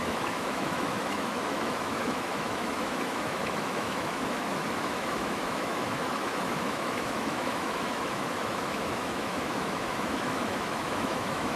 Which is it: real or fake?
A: fake